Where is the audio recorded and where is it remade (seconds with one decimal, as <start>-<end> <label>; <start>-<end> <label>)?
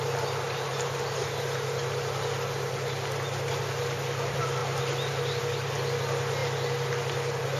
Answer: 0.0-7.6 recorded